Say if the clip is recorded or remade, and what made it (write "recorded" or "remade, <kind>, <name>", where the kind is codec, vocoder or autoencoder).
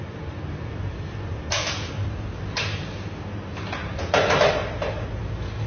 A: recorded